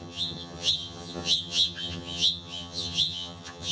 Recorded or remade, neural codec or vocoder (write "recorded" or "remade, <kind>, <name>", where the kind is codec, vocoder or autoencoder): remade, vocoder, HiFi-GAN